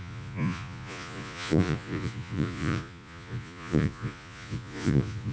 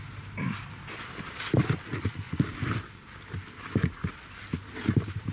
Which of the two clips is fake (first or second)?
first